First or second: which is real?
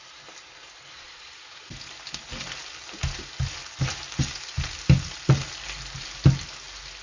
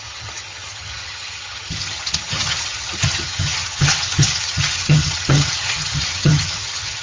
first